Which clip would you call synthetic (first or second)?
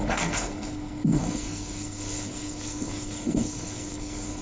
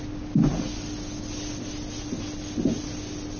first